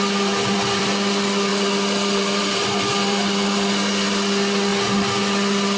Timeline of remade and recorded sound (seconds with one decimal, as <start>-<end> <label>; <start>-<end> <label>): 0.0-4.7 remade; 4.7-5.2 recorded; 5.2-5.8 remade